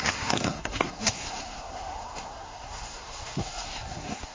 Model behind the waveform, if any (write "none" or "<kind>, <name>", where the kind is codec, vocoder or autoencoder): codec, SNAC